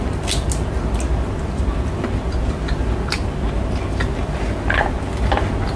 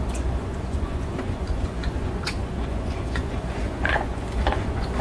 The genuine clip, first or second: first